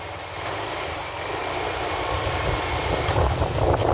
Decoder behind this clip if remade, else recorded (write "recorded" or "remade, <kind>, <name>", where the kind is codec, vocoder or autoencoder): recorded